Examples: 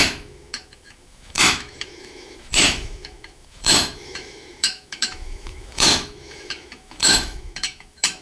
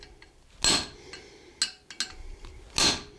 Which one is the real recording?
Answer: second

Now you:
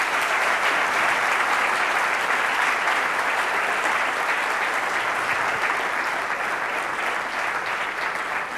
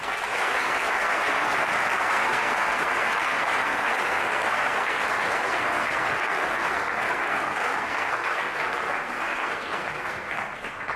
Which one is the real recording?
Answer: first